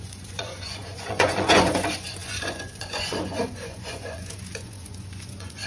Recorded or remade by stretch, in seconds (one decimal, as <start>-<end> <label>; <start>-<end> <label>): 0.0-5.7 remade